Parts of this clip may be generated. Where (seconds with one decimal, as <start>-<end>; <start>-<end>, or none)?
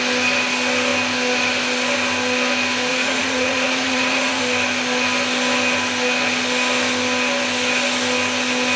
2.9-4.4